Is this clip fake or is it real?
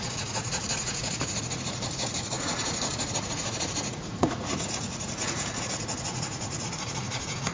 fake